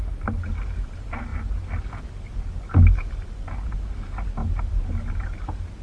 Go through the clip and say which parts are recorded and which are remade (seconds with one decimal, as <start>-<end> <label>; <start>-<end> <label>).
0.0-5.8 recorded